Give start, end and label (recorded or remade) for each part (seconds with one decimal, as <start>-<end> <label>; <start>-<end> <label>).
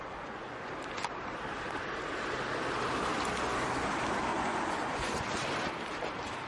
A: 0.0-0.7 remade; 0.7-4.3 recorded; 4.3-5.2 remade; 5.2-6.5 recorded